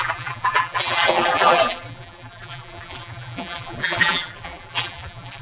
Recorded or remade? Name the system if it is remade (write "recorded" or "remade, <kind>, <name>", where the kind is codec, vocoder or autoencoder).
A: remade, vocoder, BigVGAN v2